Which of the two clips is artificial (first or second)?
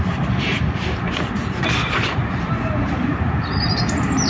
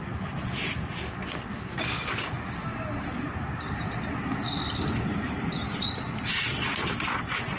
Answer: first